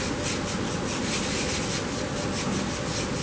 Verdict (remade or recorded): recorded